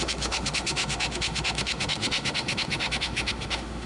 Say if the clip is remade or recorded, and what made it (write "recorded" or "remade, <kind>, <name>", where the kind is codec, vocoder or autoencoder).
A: remade, autoencoder, DAC-VAE